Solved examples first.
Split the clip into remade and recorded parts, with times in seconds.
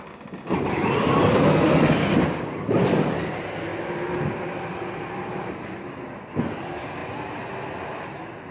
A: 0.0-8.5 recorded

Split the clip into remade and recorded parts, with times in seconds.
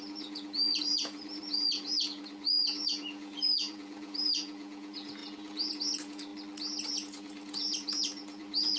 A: 0.0-6.3 remade; 6.3-6.9 recorded; 6.9-8.8 remade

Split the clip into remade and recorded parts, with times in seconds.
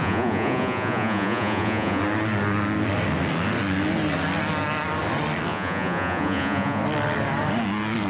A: 0.0-2.0 remade; 2.0-5.5 recorded; 5.5-6.8 remade; 6.8-8.1 recorded